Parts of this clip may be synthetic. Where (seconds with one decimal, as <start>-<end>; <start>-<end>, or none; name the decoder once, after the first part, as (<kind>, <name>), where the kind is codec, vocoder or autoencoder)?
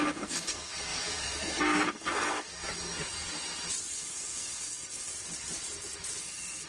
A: 0.0-2.6 (codec, SNAC); 3.9-5.1; 6.2-6.7